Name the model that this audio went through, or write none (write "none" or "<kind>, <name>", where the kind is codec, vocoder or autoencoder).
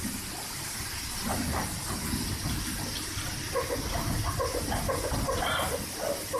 none